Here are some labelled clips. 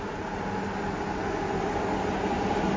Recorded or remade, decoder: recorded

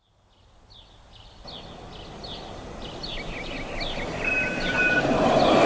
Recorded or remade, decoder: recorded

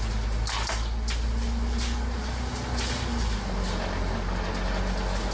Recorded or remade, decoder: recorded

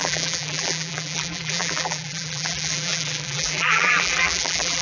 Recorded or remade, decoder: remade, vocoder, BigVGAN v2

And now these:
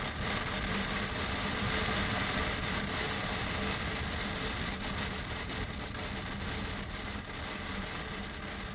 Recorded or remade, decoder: recorded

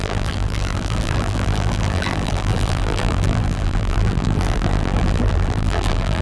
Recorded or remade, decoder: remade, vocoder, BigVGAN v2